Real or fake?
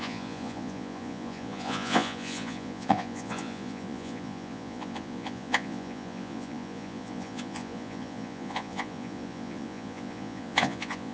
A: fake